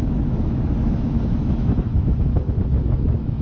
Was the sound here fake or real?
fake